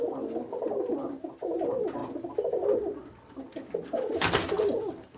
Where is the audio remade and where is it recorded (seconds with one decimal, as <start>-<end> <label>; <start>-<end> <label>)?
0.0-5.2 recorded